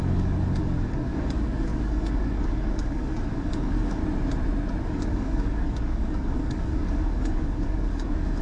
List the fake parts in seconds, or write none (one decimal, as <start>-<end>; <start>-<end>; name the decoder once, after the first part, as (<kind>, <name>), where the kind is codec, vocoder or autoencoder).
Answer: 0.0-4.0 (codec, DAC); 4.8-8.4